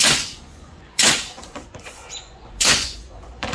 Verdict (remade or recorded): remade